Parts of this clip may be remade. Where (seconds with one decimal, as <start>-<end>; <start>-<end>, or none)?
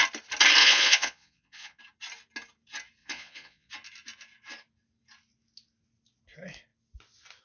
0.6-1.8; 3.0-3.7